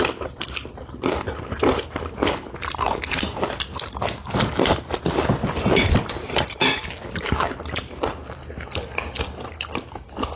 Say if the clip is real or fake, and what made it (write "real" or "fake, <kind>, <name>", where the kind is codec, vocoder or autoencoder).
real